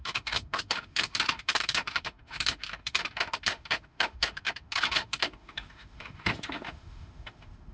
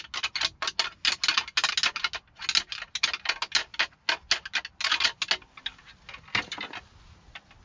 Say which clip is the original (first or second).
second